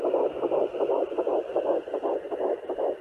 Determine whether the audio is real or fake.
fake